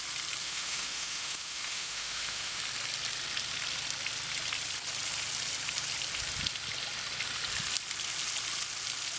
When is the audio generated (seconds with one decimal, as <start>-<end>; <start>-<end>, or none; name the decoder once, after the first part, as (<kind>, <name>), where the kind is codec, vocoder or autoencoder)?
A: 0.4-2.6 (autoencoder, DAC-VAE)

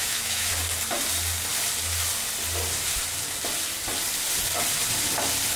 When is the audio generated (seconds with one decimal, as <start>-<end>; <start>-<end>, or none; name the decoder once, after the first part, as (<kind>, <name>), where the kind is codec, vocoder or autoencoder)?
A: 0.0-0.5 (autoencoder, DAC-VAE)

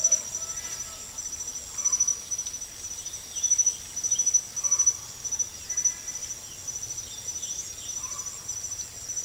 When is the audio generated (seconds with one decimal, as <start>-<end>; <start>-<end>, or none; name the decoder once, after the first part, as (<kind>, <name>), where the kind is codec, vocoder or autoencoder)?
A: none

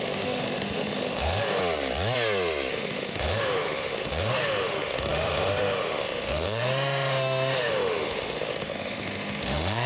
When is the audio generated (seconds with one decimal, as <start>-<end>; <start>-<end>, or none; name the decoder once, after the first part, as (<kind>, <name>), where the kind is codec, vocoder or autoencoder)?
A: 0.0-1.6 (autoencoder, DAC-VAE); 2.7-9.9

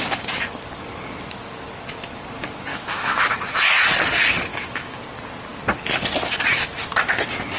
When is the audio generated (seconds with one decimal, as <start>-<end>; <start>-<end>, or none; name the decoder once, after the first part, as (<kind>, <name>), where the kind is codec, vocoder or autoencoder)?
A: 2.7-3.3 (autoencoder, DAC-VAE); 4.5-5.0

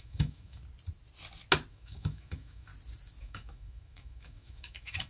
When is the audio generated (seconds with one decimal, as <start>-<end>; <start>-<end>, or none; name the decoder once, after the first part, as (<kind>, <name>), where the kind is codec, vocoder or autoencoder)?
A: 0.0-0.6 (autoencoder, DAC-VAE); 1.7-2.7; 3.2-5.1